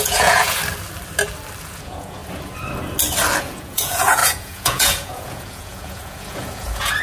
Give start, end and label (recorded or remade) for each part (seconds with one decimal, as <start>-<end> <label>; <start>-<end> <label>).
0.0-0.6 remade; 0.6-1.6 recorded; 1.6-2.2 remade; 2.2-3.4 recorded; 3.4-7.0 remade